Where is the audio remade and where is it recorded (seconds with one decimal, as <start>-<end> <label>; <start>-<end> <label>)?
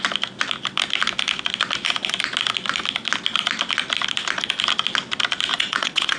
0.0-5.5 recorded; 5.5-6.2 remade